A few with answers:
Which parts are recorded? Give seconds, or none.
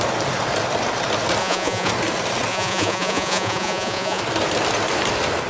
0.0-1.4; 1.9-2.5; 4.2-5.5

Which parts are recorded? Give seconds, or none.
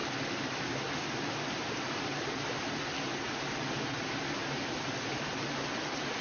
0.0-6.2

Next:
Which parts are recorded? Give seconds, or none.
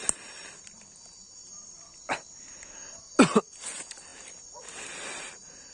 0.0-5.7